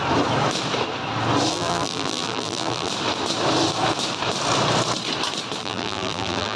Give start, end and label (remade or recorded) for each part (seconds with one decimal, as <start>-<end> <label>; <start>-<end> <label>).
0.0-1.5 recorded; 1.5-2.9 remade; 2.9-5.6 recorded; 5.6-6.6 remade